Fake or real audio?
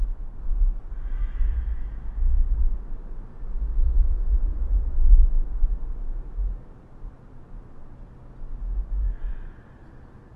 real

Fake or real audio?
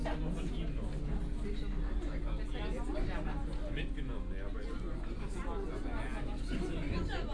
real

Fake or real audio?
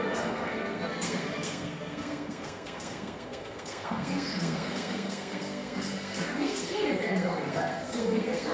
fake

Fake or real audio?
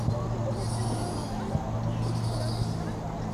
real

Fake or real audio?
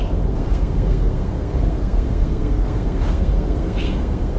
fake